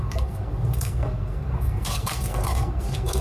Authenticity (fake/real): fake